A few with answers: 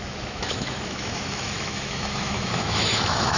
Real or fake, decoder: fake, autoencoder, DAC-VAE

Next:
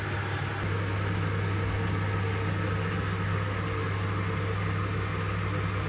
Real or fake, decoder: real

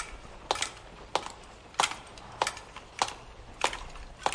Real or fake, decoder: real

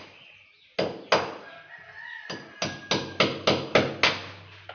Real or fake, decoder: real